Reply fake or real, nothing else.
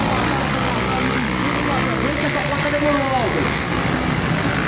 real